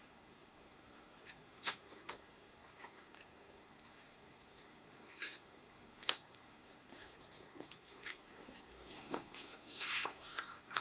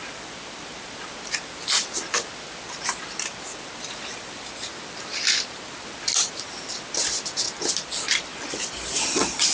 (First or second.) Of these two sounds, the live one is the second